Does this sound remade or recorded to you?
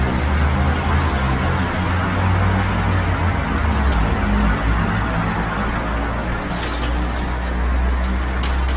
recorded